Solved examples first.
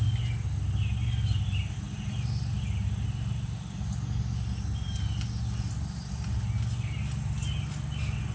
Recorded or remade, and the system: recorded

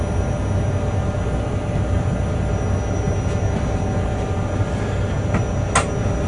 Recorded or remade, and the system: recorded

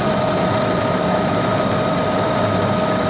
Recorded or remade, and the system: remade, vocoder, BigVGAN v2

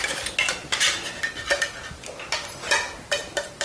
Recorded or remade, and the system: recorded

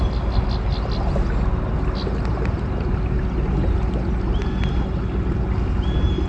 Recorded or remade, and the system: recorded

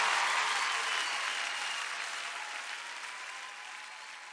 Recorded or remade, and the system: recorded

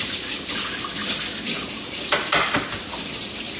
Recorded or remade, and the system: recorded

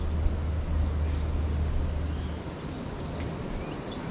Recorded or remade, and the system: recorded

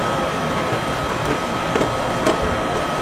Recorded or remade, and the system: recorded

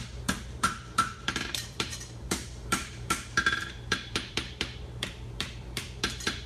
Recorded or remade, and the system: remade, vocoder, BigVGAN v2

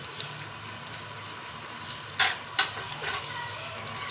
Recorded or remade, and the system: recorded